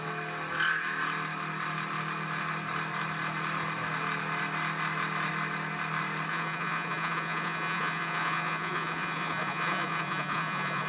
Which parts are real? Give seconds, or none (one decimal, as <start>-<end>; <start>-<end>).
0.0-6.3